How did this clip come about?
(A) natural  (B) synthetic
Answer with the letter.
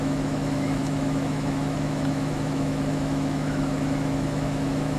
B